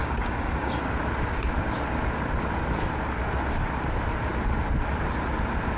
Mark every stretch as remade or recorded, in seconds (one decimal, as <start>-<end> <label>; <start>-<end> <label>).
0.0-0.7 remade; 0.7-5.8 recorded